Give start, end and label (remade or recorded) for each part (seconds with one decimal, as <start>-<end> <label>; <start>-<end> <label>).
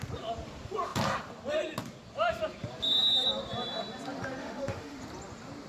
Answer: 0.0-4.4 recorded; 4.4-5.0 remade; 5.0-5.7 recorded